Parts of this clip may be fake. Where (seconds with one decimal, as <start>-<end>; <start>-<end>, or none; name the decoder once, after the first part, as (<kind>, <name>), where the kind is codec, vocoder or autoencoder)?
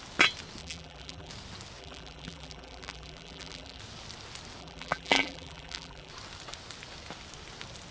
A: 0.6-1.3 (vocoder, BigVGAN v2); 1.8-3.8; 4.6-6.1